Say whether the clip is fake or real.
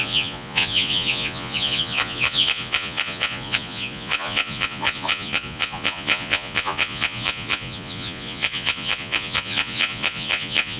fake